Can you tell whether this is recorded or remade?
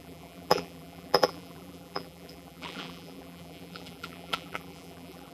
remade